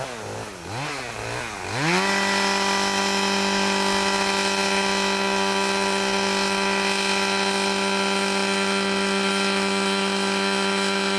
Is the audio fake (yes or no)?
no